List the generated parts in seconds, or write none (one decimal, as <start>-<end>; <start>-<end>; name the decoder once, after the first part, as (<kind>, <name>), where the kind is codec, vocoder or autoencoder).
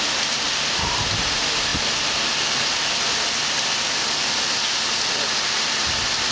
none